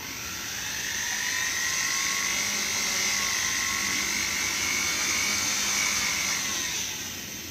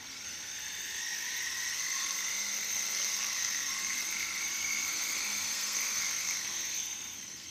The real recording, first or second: first